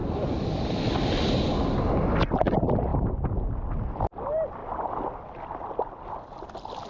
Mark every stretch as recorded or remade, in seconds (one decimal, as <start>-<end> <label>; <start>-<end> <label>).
0.0-6.9 recorded